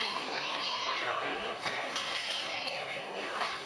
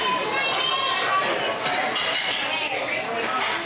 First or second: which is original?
second